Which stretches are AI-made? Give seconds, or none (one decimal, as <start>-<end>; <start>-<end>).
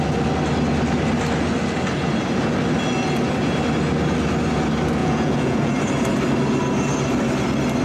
5.0-5.7